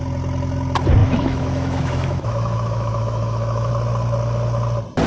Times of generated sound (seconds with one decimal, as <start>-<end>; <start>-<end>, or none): 1.0-3.7